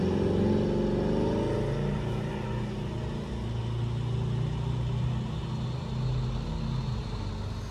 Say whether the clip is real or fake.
real